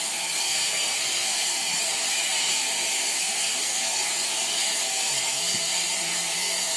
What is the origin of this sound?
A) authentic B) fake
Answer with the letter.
B